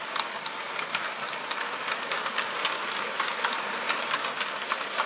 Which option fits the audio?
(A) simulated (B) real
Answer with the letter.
B